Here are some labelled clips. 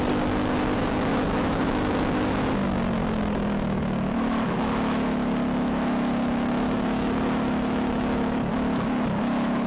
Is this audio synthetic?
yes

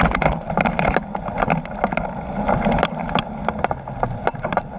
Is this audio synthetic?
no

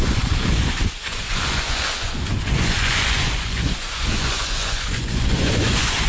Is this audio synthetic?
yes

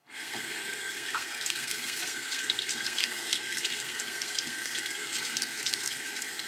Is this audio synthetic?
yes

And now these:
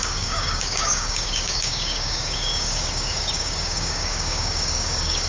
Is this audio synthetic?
yes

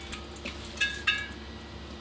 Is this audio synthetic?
no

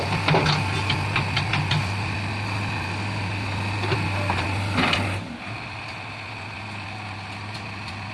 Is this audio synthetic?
no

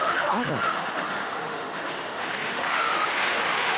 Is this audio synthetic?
yes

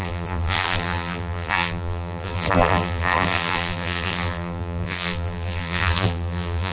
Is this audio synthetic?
yes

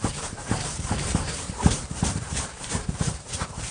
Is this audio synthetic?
yes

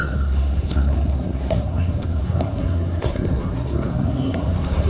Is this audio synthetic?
yes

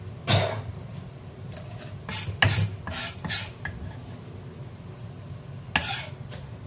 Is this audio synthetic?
no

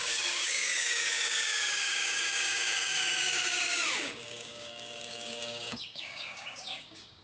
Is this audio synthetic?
yes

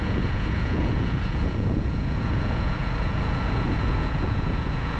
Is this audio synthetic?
yes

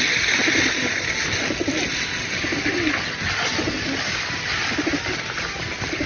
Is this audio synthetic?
no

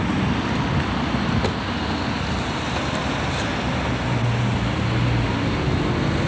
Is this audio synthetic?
no